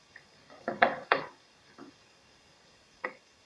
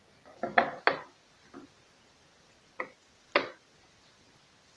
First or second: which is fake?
first